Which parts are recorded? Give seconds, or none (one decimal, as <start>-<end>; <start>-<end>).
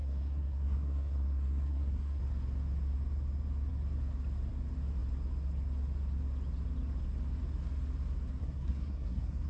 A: 2.2-8.4